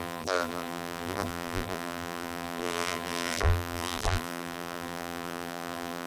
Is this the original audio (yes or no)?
no